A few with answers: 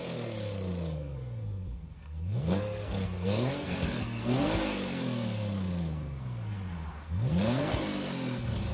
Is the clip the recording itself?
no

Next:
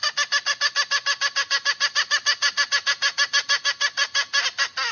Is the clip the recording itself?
yes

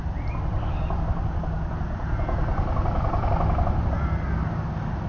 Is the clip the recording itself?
yes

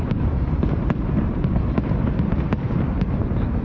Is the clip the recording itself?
no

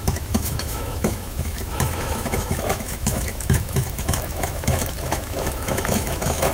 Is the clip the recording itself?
no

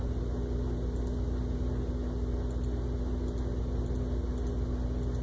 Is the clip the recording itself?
yes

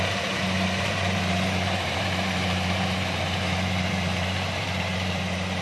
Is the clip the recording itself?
no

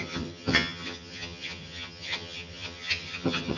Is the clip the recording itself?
no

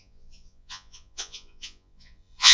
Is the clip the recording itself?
no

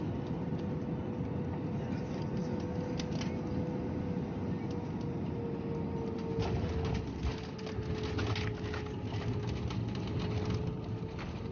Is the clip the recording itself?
yes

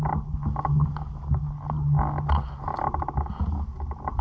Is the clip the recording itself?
yes